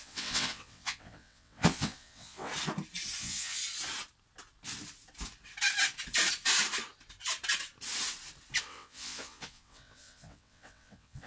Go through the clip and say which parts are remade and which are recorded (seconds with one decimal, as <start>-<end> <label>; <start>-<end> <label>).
0.0-2.5 remade; 2.5-3.2 recorded; 3.2-3.6 remade; 3.6-8.6 recorded; 8.6-11.3 remade